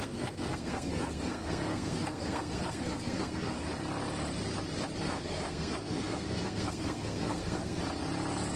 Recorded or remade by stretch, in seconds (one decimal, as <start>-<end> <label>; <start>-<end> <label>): 0.0-3.7 remade; 3.7-5.0 recorded; 5.0-7.8 remade; 7.8-8.6 recorded